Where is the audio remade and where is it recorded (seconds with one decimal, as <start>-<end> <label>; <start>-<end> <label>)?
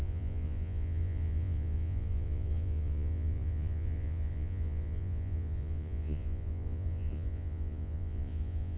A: 0.0-8.8 remade